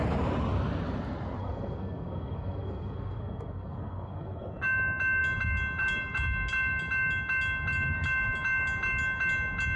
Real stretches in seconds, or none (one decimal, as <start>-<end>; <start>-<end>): 0.0-1.4; 4.6-9.8